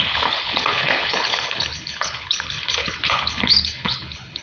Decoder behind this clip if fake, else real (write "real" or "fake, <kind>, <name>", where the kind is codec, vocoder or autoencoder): fake, codec, HILCodec